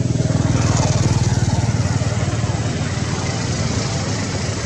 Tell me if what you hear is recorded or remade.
recorded